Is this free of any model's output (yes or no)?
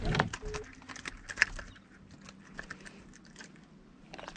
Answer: yes